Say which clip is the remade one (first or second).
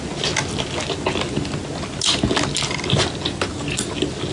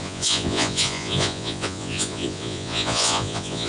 second